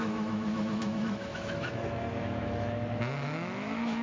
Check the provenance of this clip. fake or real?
fake